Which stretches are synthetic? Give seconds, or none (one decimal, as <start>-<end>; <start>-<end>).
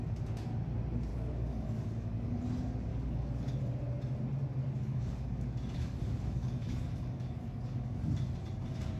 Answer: 1.1-2.4; 2.9-3.5; 4.6-8.1